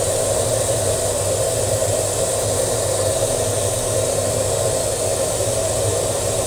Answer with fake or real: real